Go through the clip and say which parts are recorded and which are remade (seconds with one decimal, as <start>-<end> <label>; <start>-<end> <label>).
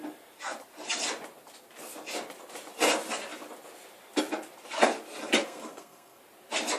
0.0-5.4 recorded; 5.4-6.2 remade; 6.2-6.8 recorded